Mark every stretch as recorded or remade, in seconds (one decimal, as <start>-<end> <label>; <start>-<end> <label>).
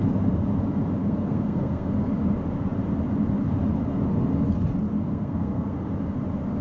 0.0-1.0 recorded; 1.0-1.9 remade; 1.9-5.1 recorded; 5.1-5.8 remade; 5.8-6.6 recorded